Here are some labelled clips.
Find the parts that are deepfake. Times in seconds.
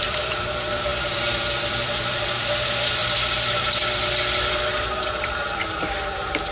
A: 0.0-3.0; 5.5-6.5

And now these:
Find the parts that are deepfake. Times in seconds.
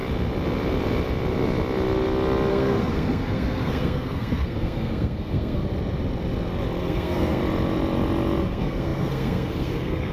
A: 2.5-5.6; 6.8-7.4; 8.4-10.1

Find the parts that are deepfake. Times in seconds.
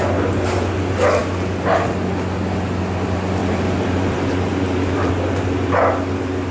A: 3.4-5.1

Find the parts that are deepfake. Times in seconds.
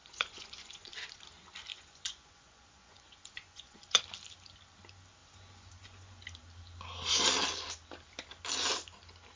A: 0.0-1.1; 1.7-4.0; 5.2-6.2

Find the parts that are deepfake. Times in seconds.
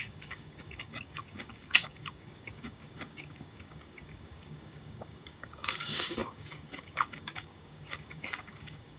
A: 0.0-9.0